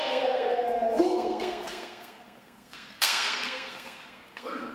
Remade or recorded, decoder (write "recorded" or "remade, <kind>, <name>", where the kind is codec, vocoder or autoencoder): remade, codec, SNAC